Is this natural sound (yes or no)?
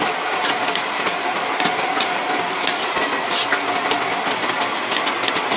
yes